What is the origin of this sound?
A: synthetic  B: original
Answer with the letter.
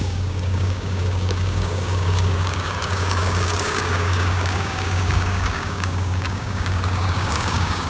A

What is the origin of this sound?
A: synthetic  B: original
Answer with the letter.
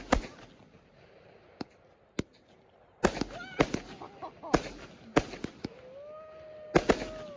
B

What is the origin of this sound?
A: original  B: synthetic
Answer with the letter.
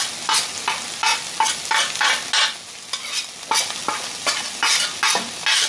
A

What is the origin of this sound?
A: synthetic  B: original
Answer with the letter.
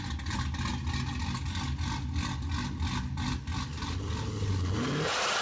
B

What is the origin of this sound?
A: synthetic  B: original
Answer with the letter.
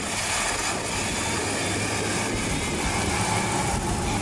B